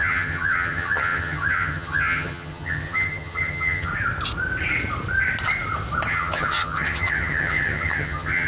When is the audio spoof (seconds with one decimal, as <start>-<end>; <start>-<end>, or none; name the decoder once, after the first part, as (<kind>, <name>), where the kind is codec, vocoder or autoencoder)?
0.0-3.9 (vocoder, HiFi-GAN); 6.1-8.5